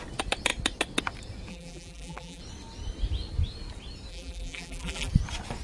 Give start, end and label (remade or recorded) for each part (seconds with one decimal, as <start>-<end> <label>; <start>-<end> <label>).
0.0-1.5 recorded; 1.5-2.4 remade; 2.4-4.1 recorded; 4.1-5.1 remade; 5.1-5.6 recorded